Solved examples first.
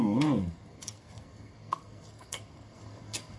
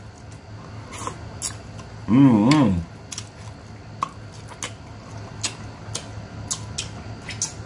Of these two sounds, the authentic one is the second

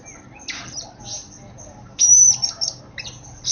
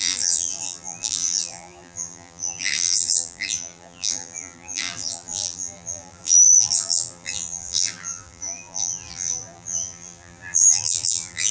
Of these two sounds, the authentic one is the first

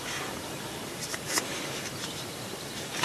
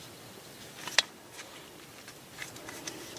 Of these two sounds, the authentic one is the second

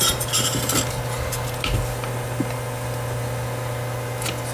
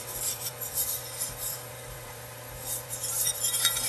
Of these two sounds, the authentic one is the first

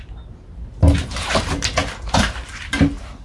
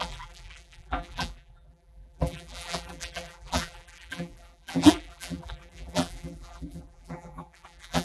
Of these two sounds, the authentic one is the first